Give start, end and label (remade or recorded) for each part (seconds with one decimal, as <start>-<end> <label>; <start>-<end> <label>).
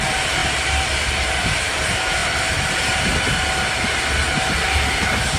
0.0-5.4 recorded